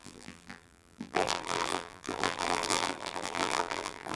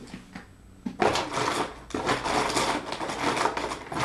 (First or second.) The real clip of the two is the second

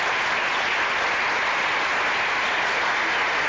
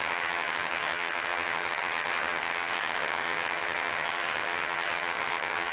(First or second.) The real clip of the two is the first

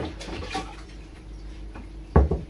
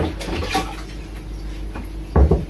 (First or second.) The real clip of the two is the second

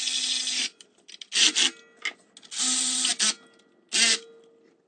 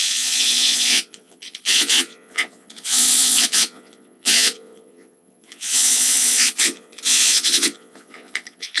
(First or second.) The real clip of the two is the first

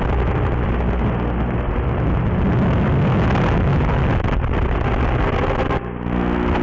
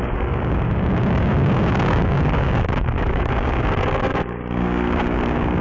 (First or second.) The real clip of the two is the first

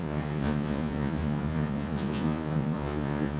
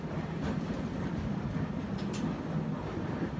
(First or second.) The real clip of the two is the second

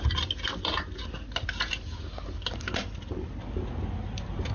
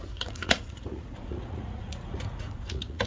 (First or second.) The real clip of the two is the first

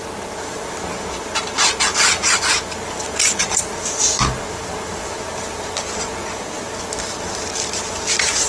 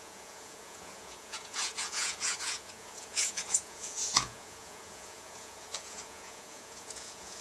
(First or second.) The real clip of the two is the first